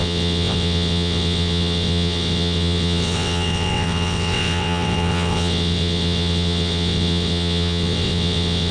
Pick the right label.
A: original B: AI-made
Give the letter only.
B